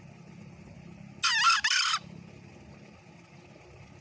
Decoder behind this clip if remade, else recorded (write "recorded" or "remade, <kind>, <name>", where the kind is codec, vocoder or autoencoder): recorded